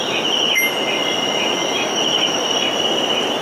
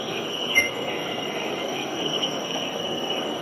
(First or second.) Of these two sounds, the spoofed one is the second